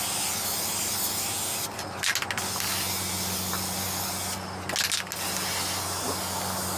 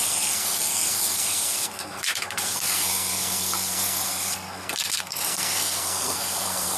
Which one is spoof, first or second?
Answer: second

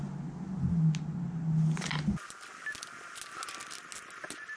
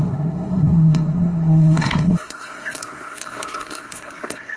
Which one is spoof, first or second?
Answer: second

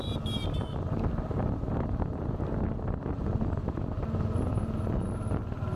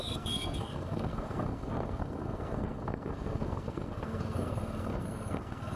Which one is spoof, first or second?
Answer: second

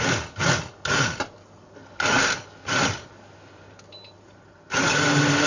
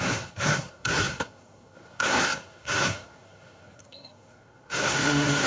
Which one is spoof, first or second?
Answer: second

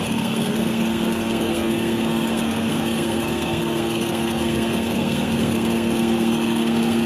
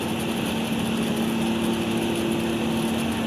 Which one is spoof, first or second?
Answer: first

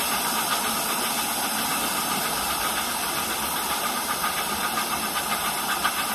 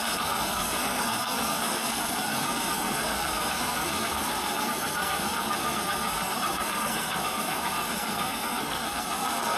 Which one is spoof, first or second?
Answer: second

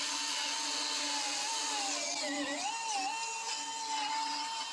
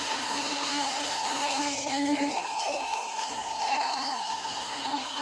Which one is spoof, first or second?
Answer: second